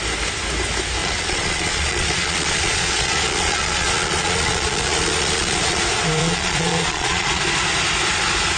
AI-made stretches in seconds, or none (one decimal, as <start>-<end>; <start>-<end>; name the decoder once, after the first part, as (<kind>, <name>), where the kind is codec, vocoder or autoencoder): 1.0-5.8 (vocoder, Vocos); 6.2-7.4